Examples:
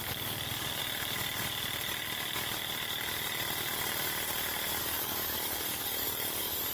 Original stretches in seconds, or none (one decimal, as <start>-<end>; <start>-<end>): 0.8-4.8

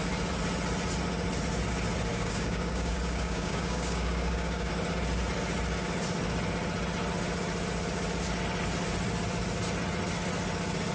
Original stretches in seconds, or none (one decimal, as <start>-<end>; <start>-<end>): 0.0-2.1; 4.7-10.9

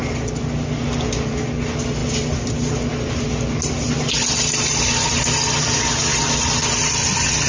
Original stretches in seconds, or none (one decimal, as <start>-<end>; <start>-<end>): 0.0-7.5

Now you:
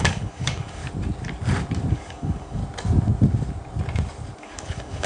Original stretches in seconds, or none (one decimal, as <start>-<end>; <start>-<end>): 0.8-1.9; 2.6-4.4